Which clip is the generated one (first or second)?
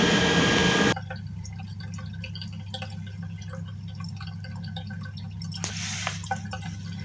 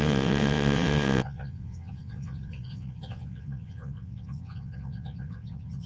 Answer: second